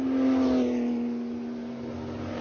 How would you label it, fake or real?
real